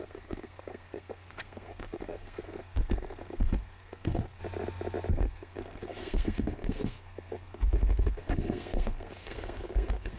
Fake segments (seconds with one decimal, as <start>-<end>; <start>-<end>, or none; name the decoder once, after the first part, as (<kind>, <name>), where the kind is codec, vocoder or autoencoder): 0.0-4.4 (codec, SNAC); 5.1-10.2